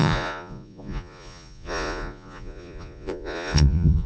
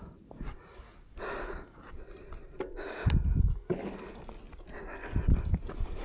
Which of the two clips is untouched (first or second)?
second